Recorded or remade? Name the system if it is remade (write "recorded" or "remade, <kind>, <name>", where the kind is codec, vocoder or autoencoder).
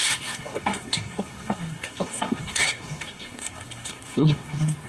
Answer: remade, codec, SNAC